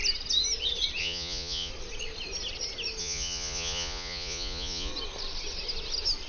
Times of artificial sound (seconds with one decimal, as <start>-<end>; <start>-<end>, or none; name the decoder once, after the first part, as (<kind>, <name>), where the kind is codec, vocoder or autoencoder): 1.0-1.7 (vocoder, Vocos); 3.0-4.9